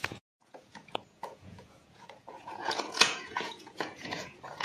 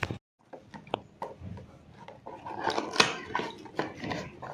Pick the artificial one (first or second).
first